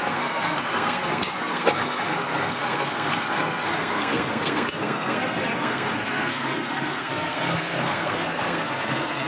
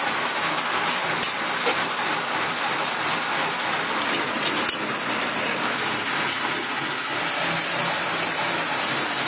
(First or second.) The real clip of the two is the second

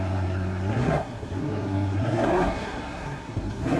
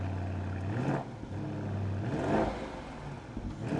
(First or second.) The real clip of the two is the second